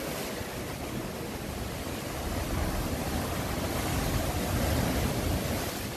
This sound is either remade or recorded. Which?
recorded